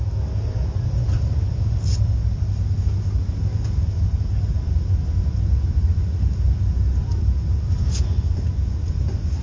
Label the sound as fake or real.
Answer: real